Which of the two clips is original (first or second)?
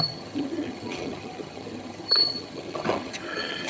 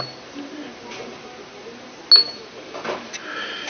second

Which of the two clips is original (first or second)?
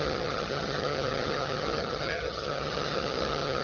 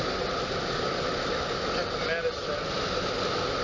second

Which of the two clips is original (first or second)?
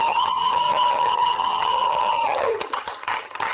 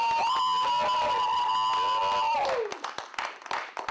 second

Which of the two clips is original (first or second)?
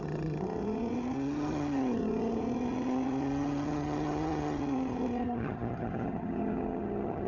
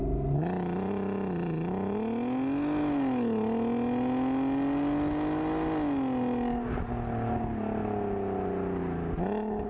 second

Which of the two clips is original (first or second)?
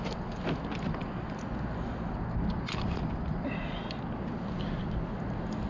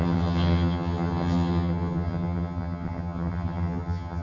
first